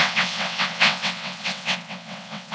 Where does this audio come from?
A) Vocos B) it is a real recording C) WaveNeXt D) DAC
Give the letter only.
C